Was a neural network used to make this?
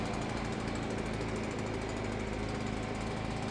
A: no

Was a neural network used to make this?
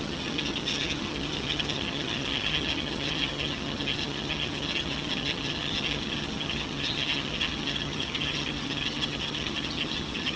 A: yes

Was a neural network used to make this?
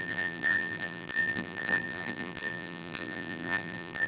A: yes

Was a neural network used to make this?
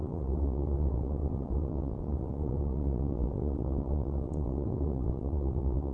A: yes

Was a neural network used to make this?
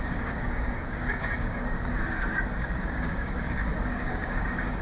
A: yes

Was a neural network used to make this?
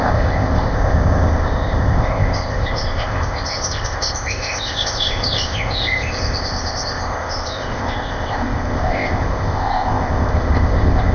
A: yes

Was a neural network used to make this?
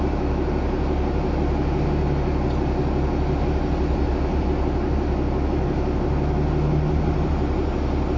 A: no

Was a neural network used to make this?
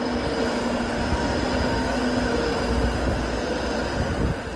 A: no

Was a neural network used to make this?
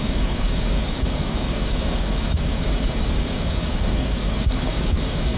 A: yes